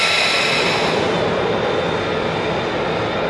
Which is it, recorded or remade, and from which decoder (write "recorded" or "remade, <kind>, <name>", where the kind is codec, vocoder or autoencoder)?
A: recorded